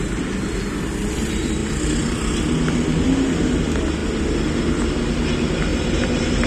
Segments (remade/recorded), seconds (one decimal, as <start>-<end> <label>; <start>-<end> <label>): 0.0-1.6 recorded; 1.6-2.7 remade; 2.7-5.7 recorded; 5.7-6.5 remade